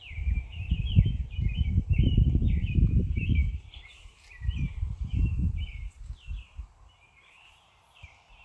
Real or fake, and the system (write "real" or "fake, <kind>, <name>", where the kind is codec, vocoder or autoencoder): fake, vocoder, BigVGAN v2